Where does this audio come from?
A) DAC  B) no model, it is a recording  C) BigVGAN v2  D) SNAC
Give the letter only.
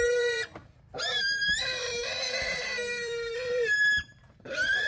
C